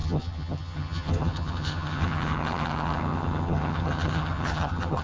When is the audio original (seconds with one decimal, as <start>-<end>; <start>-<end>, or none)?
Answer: none